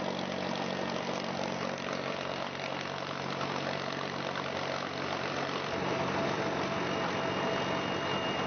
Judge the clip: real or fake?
fake